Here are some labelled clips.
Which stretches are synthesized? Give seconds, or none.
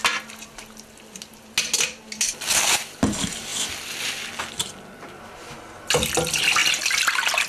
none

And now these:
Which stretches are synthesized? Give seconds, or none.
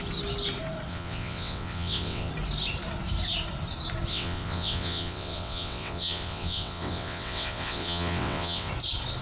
0.9-2.3 (vocoder, WaveNeXt); 4.1-8.7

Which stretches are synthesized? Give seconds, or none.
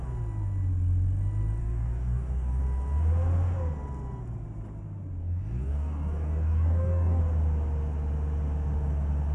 1.6-2.6 (codec, DAC); 5.2-7.2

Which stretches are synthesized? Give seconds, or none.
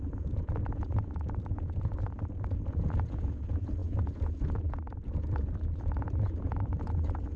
0.0-7.4 (vocoder, Vocos)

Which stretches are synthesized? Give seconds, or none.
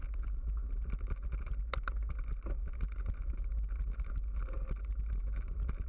none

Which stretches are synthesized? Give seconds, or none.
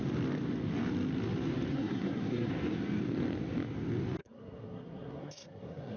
1.7-2.5 (codec, SNAC); 4.2-6.0